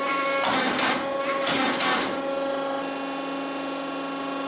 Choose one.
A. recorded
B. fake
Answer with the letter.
A